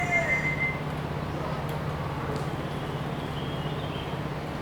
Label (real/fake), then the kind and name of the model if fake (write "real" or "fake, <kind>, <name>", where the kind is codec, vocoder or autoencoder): real